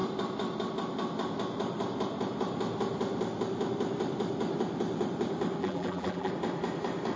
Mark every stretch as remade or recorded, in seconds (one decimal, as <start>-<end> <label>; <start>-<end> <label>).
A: 0.0-5.6 recorded; 5.6-6.3 remade; 6.3-7.2 recorded